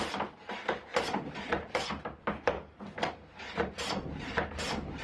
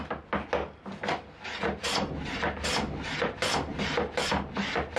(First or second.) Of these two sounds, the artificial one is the first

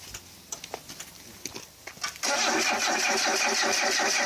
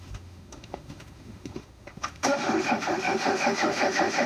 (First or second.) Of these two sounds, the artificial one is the second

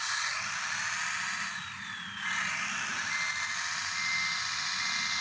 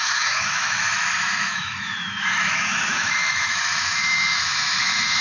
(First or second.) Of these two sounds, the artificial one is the second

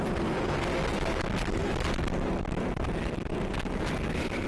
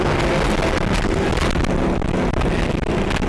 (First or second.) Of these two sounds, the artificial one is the first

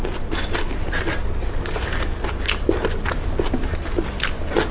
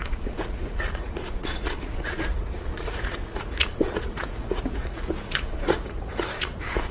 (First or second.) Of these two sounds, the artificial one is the second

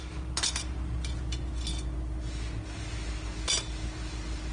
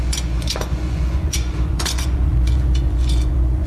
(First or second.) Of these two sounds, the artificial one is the second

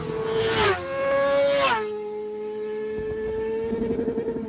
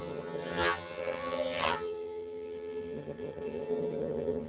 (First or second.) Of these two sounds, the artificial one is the second